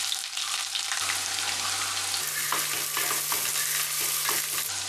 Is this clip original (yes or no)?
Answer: yes